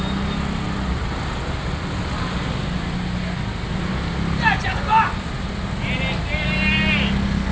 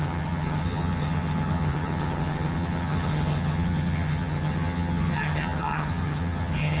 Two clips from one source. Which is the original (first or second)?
first